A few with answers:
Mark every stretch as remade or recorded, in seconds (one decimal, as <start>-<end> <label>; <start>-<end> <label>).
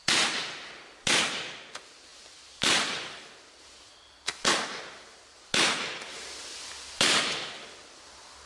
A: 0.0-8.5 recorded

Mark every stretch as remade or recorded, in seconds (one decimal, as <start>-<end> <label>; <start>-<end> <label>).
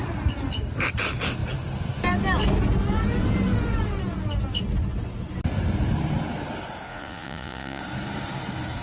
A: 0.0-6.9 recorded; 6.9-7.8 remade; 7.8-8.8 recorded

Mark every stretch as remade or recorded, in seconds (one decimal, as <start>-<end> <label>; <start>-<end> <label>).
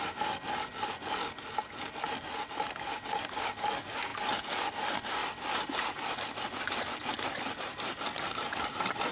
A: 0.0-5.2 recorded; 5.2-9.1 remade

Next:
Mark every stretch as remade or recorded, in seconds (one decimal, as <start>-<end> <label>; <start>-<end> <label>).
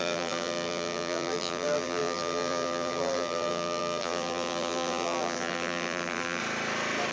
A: 0.0-6.4 remade; 6.4-7.1 recorded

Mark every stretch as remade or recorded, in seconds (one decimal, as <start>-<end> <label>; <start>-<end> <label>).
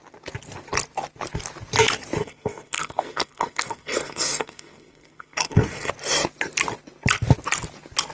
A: 0.0-2.2 recorded; 2.2-5.9 remade; 5.9-8.1 recorded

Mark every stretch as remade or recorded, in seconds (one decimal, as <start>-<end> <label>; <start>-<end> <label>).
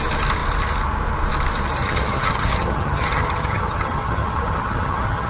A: 0.0-1.8 recorded; 1.8-5.3 remade